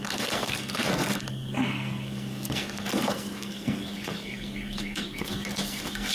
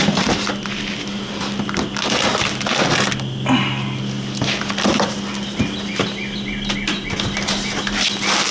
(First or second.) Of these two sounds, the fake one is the first